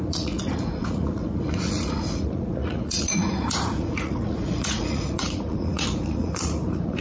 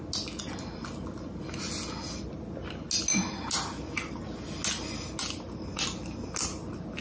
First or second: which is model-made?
first